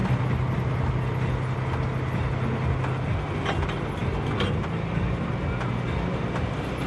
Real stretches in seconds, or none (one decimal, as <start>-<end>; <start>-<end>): 0.0-6.9